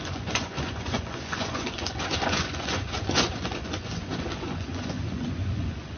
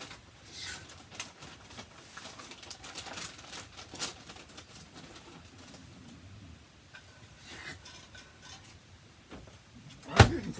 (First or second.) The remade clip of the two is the first